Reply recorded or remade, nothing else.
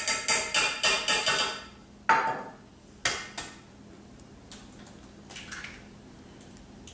recorded